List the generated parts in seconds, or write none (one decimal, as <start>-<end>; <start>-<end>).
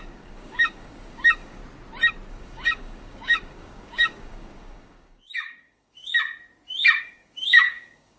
0.0-1.6; 2.3-6.1; 7.0-8.2